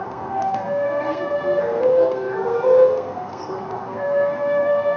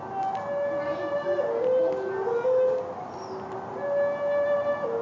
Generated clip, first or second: first